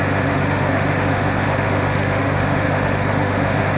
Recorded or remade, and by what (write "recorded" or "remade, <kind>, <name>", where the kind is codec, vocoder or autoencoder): remade, autoencoder, DAC-VAE